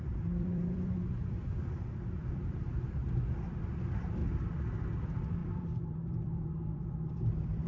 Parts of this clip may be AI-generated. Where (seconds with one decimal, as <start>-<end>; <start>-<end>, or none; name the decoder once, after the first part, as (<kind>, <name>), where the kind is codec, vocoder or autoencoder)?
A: 0.0-4.2 (vocoder, BigVGAN v2); 5.0-7.7